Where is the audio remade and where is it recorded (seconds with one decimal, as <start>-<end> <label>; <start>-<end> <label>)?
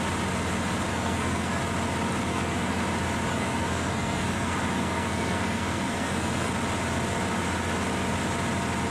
0.0-0.9 recorded; 0.9-1.6 remade; 1.6-2.3 recorded; 2.3-2.8 remade; 2.8-3.3 recorded; 3.3-6.5 remade; 6.5-8.9 recorded